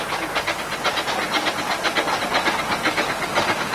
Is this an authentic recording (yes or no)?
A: yes